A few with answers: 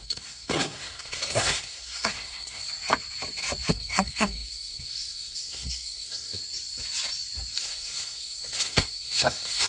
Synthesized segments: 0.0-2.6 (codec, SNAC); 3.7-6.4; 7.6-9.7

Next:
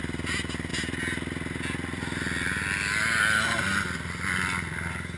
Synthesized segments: none

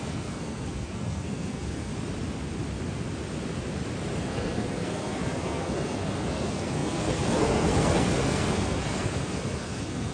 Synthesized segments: 0.0-1.9 (codec, SNAC); 4.2-10.1

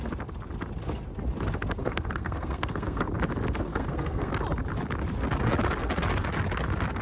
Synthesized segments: 1.8-3.1 (codec, SNAC); 3.7-4.3

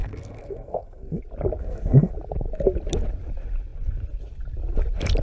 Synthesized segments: 0.0-1.2 (codec, SNAC); 1.6-2.1

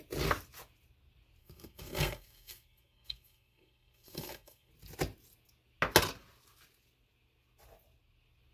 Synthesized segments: 1.4-4.7 (codec, SNAC)

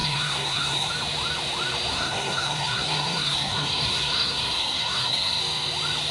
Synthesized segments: 0.0-0.9 (codec, SNAC); 1.9-5.4

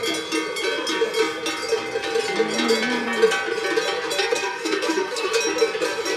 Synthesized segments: 4.2-5.3 (codec, SNAC)